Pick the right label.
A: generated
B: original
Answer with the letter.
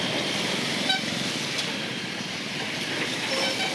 A